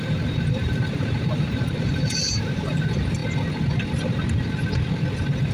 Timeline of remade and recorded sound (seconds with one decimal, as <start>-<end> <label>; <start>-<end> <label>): 0.0-3.2 remade; 3.2-5.5 recorded